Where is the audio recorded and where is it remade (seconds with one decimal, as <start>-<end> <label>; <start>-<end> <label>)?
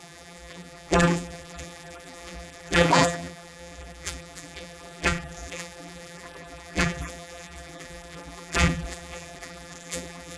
0.0-10.4 remade